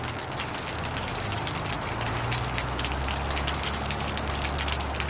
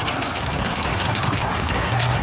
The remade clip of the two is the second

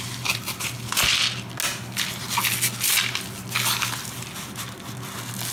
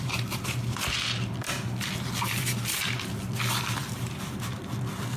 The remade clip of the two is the second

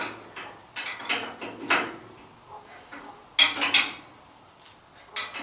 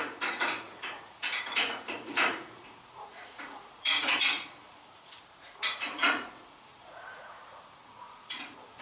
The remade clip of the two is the second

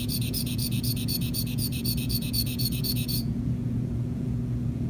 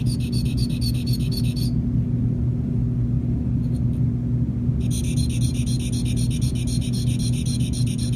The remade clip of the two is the first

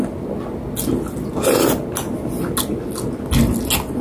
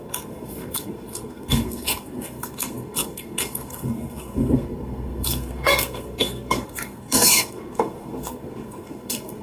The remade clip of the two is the second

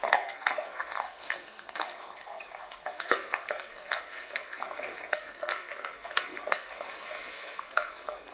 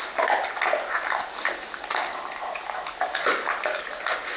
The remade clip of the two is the first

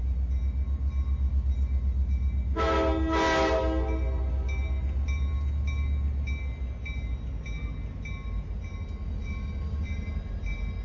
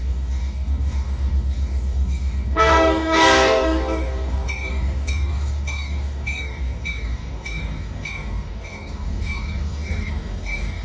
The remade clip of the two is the second